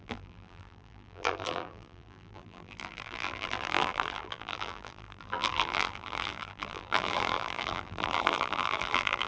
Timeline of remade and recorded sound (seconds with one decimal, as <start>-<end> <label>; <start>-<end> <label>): 0.0-9.3 remade